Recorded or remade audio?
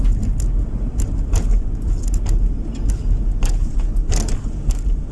recorded